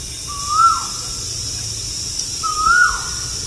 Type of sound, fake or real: real